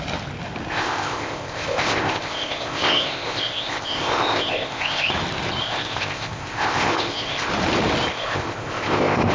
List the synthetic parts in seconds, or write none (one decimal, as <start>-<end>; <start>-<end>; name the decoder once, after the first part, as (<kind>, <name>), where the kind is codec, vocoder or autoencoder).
0.7-5.1 (codec, ZipCodec); 5.6-7.5; 8.1-9.3